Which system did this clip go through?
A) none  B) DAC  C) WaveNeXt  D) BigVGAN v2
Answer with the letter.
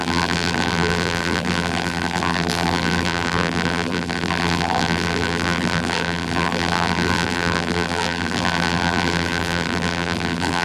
D